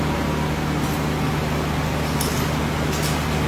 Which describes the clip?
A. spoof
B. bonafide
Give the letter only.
B